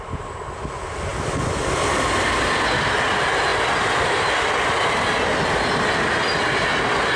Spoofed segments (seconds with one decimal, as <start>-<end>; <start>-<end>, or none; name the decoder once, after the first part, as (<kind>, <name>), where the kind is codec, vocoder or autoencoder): none

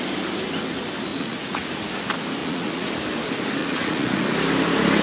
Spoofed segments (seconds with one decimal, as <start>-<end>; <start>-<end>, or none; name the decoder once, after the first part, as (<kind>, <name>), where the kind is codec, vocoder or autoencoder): 1.1-1.7 (vocoder, Vocos); 2.4-2.9; 3.6-4.2